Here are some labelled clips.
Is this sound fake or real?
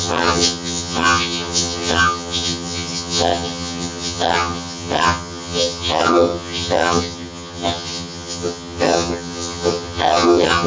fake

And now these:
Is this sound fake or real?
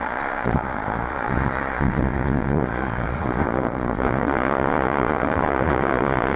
fake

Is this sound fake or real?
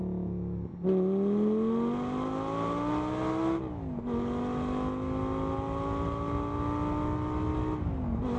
real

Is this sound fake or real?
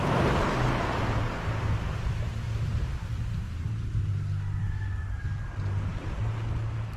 real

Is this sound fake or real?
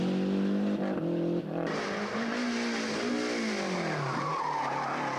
real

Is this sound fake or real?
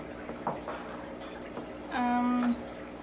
real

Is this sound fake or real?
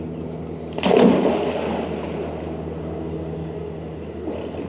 real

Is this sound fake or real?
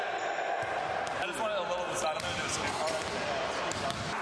real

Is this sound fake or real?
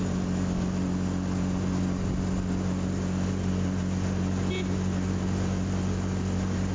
real